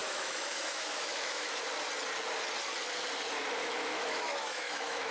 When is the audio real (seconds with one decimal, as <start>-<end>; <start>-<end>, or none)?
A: 1.6-3.6